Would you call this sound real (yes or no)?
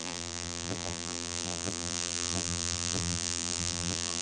no